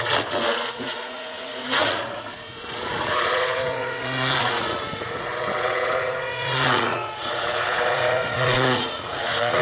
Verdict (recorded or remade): remade